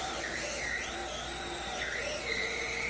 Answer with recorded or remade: recorded